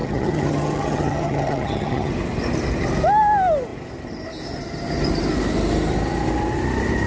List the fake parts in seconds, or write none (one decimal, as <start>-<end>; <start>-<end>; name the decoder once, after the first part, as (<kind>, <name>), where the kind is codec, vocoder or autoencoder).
0.0-2.1 (vocoder, HiFi-GAN)